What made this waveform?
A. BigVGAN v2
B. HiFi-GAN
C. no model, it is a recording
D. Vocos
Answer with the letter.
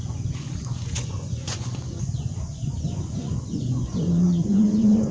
D